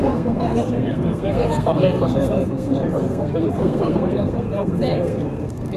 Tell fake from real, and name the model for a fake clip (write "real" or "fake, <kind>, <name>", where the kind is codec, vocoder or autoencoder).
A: fake, codec, SNAC